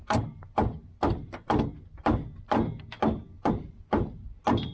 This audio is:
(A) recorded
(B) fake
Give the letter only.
A